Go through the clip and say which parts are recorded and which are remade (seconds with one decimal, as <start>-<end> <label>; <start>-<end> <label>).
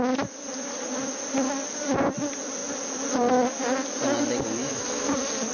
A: 0.0-4.6 recorded; 4.6-5.1 remade; 5.1-5.5 recorded